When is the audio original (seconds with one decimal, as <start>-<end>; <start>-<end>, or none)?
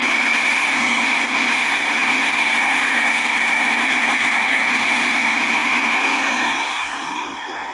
none